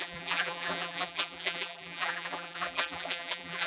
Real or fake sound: fake